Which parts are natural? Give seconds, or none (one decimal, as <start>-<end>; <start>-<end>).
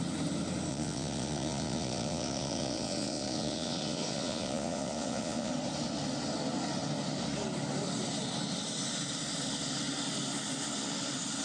0.0-0.7; 5.5-11.4